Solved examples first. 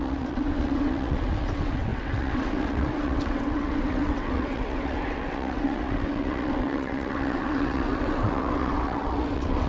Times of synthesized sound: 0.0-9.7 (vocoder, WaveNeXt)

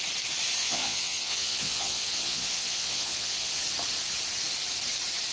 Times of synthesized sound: 0.6-3.5 (vocoder, Vocos)

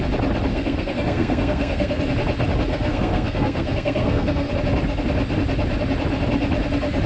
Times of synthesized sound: 0.5-2.0 (codec, SNAC); 2.7-4.5